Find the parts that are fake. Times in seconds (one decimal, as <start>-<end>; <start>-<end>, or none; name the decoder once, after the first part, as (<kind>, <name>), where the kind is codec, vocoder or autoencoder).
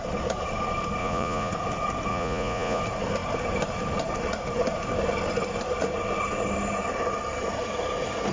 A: 1.0-1.5 (vocoder, Vocos); 2.1-2.8